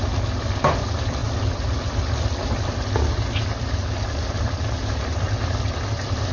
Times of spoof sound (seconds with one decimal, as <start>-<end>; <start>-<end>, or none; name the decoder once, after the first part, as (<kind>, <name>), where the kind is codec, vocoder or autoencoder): 0.0-1.2 (vocoder, BigVGAN v2); 5.0-6.3